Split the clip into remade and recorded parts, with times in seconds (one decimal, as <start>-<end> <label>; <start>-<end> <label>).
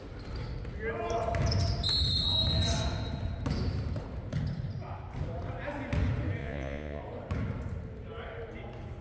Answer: 0.0-6.4 recorded; 6.4-7.0 remade; 7.0-9.0 recorded